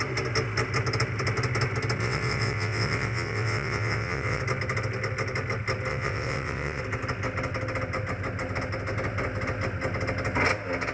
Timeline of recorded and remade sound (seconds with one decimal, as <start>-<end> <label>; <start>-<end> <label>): 0.0-2.0 recorded; 2.0-4.4 remade; 4.4-5.9 recorded; 5.9-6.8 remade; 6.8-10.9 recorded